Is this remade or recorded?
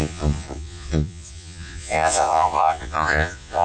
remade